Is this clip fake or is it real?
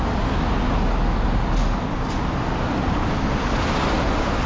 real